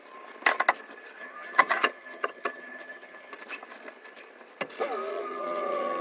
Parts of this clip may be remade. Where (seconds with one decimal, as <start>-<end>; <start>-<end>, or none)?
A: 1.2-3.3; 5.1-6.0